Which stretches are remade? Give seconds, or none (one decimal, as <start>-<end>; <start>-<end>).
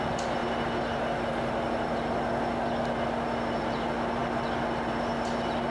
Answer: none